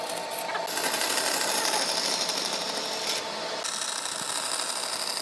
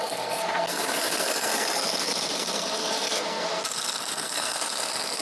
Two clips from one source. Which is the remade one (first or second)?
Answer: second